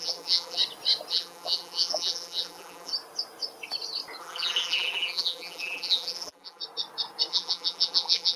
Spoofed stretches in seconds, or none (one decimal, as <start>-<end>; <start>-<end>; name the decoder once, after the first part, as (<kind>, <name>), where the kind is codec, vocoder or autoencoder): 0.0-0.6 (vocoder, BigVGAN v2); 1.1-2.9; 4.2-6.6; 7.3-8.4